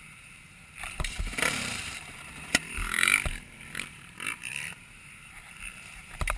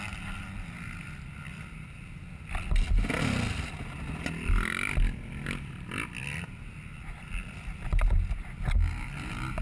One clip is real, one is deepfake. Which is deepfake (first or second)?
first